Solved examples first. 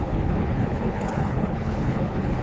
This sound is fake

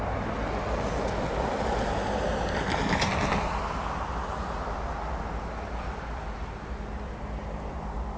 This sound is real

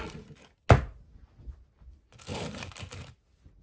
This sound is real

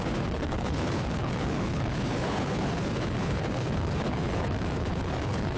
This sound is fake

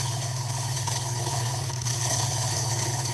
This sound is fake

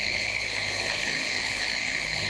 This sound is fake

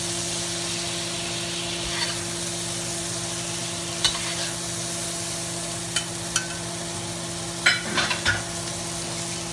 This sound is real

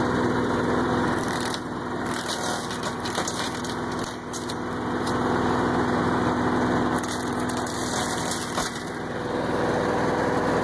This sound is real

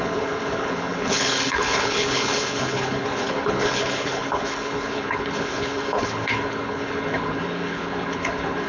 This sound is fake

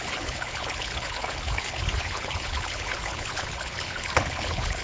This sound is fake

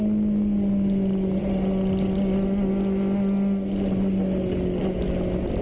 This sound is real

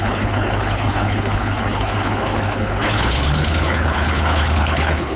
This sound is fake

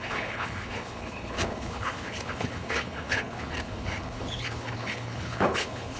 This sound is fake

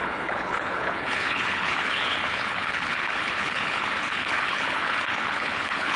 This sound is fake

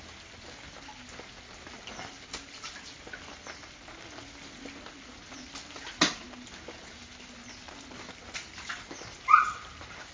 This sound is real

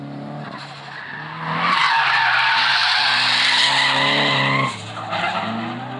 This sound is real